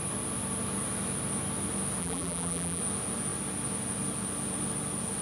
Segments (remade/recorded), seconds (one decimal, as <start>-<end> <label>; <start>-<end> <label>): 0.0-2.0 recorded; 2.0-2.8 remade; 2.8-5.2 recorded